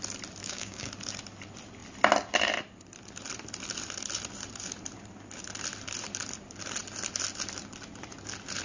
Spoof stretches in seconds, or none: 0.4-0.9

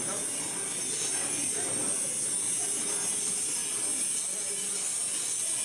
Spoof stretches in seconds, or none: none

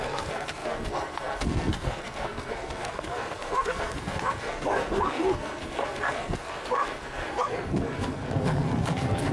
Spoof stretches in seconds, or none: 0.0-9.3

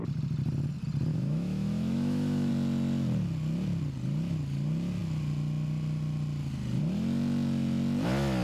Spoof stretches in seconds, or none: 1.1-2.5

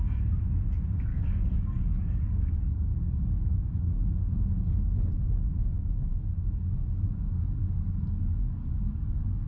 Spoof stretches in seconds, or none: 1.1-3.8; 6.1-9.5